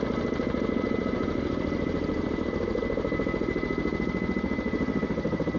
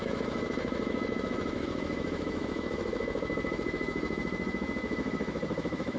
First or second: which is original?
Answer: first